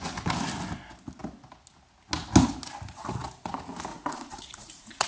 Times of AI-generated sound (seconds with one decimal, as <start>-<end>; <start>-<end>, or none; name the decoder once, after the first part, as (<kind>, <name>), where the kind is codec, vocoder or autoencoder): 3.9-5.1 (vocoder, Vocos)